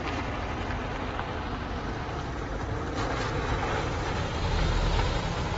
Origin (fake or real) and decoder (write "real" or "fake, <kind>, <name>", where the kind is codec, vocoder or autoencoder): real